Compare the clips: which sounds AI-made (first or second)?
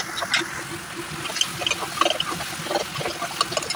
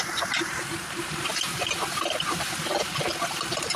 second